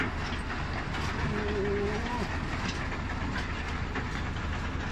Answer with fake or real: real